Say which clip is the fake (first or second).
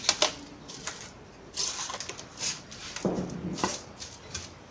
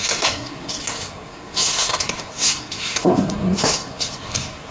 second